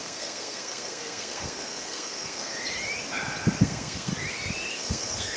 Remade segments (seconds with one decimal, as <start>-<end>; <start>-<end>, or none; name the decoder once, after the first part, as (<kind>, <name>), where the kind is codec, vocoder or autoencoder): 0.0-2.5 (codec, SNAC); 3.6-4.1; 4.7-5.4